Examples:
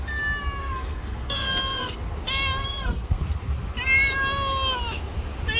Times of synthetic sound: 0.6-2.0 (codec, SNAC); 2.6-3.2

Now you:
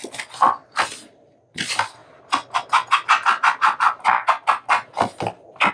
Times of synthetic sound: none

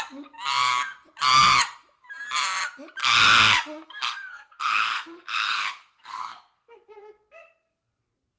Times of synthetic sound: 3.0-8.0 (codec, SNAC)